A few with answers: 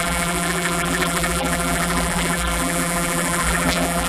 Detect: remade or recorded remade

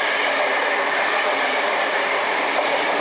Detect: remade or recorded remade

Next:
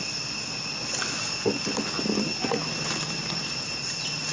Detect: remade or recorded recorded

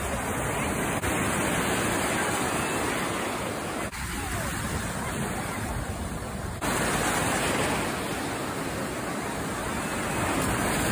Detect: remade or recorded recorded